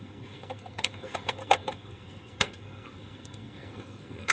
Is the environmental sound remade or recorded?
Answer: remade